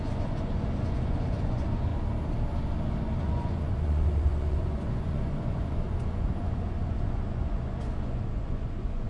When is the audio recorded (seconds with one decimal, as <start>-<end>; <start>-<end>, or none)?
1.9-3.2